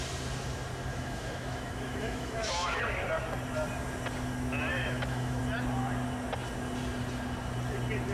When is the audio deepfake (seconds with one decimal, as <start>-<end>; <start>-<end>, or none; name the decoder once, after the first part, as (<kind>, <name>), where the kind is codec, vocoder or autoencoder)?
0.9-2.8 (autoencoder, DAC-VAE); 4.7-5.4